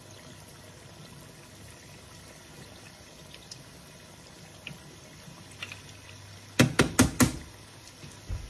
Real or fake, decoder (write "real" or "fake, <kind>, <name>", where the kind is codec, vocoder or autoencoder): real